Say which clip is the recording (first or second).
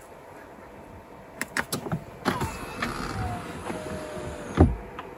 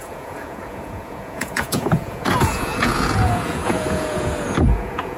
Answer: first